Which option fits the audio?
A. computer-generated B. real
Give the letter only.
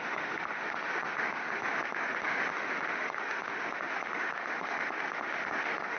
A